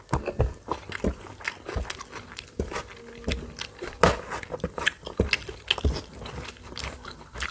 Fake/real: real